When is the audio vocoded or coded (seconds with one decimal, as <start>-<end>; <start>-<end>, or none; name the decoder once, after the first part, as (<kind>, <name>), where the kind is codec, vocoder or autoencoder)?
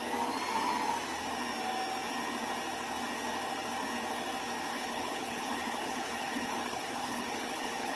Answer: 4.7-8.0 (codec, HILCodec)